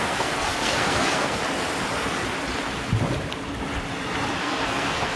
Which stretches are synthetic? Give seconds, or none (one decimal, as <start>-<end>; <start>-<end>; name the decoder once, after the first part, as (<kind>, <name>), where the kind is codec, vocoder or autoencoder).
0.0-1.4 (codec, SNAC); 4.4-5.2